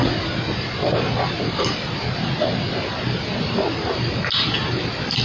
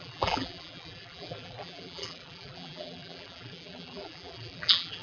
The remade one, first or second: second